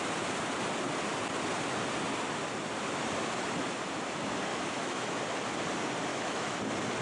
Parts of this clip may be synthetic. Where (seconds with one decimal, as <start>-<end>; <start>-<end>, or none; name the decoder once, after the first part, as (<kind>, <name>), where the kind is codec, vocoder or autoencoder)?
4.5-5.1 (autoencoder, DAC-VAE); 6.1-6.6